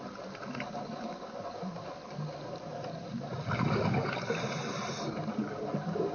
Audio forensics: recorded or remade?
recorded